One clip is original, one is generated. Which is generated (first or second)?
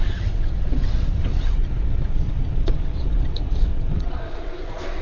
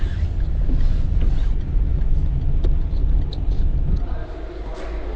first